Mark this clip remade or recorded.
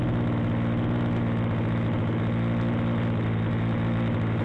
recorded